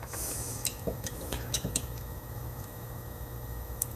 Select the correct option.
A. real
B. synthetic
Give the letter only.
B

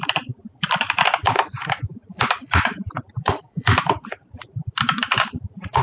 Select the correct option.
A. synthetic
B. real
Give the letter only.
A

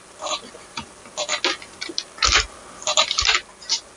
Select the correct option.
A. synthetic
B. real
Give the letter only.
B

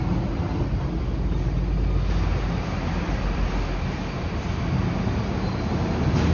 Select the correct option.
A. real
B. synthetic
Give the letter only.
A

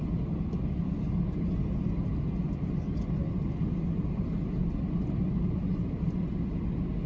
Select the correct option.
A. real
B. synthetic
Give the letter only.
A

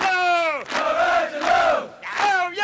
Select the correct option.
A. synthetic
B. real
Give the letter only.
B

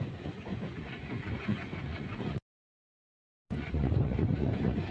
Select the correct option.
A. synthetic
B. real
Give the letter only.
A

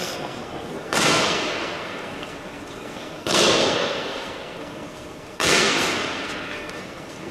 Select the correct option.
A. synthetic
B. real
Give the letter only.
A